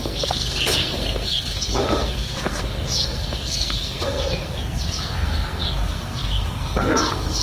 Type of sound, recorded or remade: remade